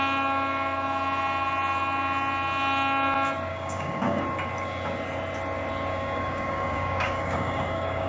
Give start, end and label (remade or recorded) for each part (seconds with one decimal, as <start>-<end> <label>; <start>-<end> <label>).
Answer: 0.0-3.5 recorded; 3.5-4.2 remade; 4.2-5.9 recorded; 5.9-8.1 remade